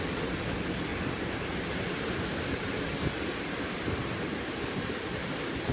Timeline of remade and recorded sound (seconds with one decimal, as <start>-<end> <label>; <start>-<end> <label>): 0.0-0.9 recorded; 0.9-4.3 remade; 4.3-5.7 recorded